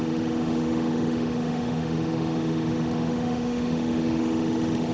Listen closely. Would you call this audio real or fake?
fake